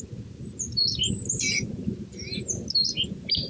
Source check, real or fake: real